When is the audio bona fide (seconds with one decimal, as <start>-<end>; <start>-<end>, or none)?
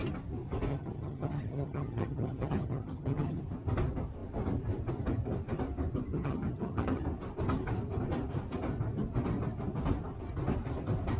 0.0-0.7; 3.4-6.1; 7.0-11.2